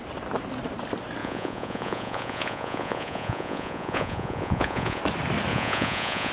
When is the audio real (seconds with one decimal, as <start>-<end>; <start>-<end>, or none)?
0.0-1.2; 5.0-5.5